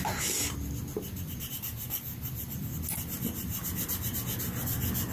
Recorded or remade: recorded